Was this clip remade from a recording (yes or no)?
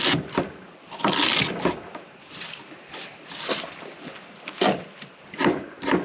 no